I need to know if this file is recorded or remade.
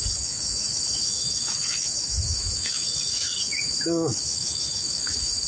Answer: remade